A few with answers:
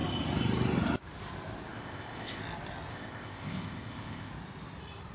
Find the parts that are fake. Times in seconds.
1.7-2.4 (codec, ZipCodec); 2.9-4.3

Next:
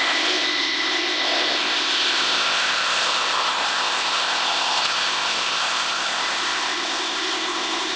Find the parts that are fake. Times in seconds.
0.0-8.0 (codec, ZipCodec)

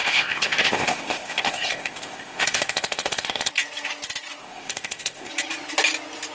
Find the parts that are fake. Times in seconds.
0.0-3.5 (codec, ZipCodec); 4.4-5.3

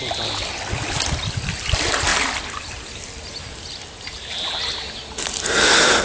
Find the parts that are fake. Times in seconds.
none

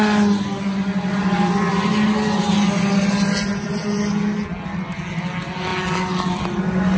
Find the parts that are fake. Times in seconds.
none